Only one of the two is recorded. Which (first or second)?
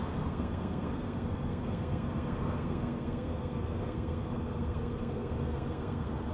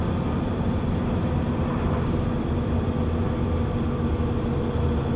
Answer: second